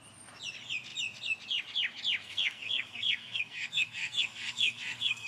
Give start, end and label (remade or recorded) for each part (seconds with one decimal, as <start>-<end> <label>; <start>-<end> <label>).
0.0-2.2 recorded; 2.2-5.3 remade